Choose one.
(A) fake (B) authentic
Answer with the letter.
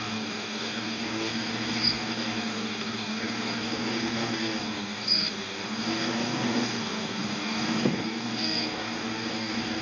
A